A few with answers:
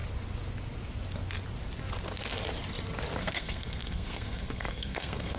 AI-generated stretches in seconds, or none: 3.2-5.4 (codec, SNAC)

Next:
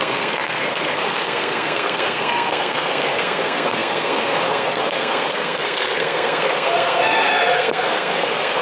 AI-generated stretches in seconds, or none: 0.0-8.6 (codec, SNAC)